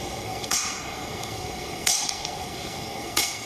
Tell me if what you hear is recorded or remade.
remade